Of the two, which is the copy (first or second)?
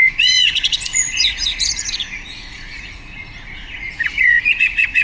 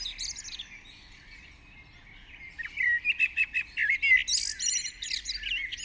first